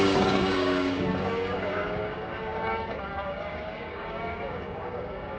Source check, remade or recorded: remade